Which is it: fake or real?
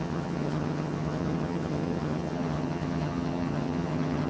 fake